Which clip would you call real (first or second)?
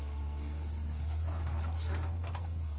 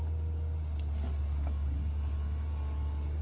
second